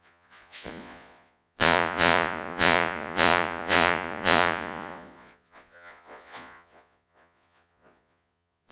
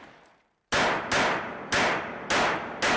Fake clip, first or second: first